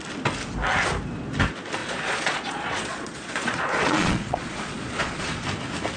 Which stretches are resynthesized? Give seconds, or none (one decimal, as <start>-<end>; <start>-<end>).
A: 1.8-5.4